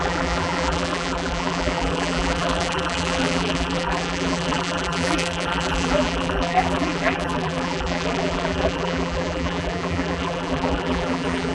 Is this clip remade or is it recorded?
remade